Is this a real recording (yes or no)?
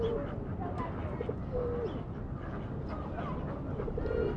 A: yes